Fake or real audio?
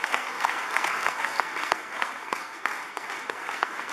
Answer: fake